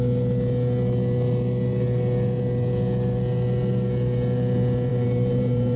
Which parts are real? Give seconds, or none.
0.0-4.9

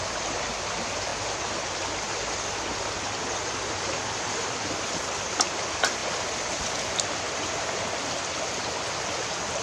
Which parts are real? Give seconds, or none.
0.0-9.6

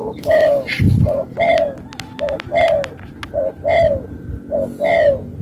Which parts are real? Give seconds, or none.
0.0-5.4